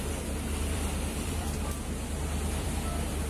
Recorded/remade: remade